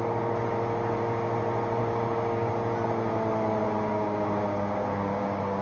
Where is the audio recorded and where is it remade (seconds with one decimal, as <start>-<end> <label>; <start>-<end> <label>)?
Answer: 0.0-1.8 recorded; 1.8-2.5 remade; 2.5-3.9 recorded; 3.9-5.6 remade